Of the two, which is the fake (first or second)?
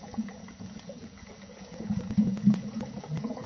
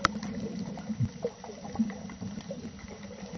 first